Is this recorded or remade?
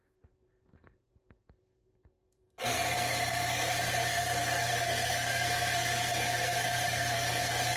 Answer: remade